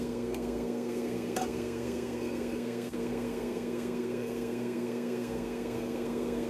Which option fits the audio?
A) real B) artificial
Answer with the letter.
B